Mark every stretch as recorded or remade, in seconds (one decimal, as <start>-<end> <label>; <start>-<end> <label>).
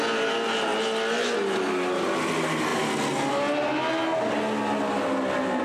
0.0-5.6 recorded